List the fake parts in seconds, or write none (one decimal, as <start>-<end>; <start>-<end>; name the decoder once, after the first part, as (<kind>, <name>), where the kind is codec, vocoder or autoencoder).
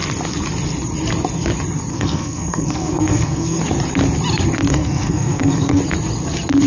1.9-3.6 (codec, SNAC); 4.7-5.8